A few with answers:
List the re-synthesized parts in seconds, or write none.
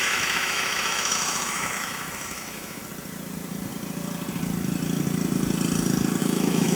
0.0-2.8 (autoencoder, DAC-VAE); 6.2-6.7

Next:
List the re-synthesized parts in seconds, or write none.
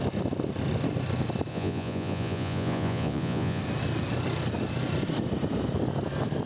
1.5-3.6 (vocoder, Vocos)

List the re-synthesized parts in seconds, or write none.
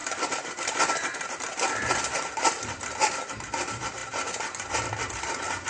none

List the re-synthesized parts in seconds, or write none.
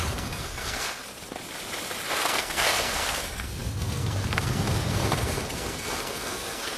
0.0-1.0 (codec, SNAC); 2.1-6.8